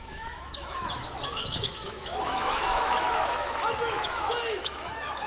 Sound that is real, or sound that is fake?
fake